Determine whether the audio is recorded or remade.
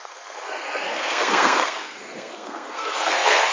remade